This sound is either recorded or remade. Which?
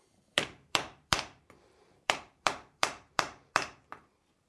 remade